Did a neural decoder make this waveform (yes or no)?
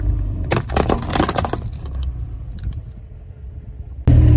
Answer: no